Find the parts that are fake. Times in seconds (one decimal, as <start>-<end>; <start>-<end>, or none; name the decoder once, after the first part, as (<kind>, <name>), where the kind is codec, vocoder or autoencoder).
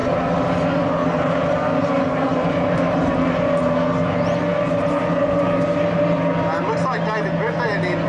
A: 0.0-0.6 (vocoder, BigVGAN v2); 1.0-3.3; 4.5-6.3